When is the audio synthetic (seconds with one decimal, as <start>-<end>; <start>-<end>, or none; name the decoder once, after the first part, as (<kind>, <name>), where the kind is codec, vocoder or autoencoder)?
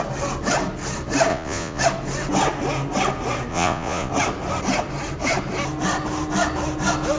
1.3-1.8 (vocoder, Vocos); 3.5-4.1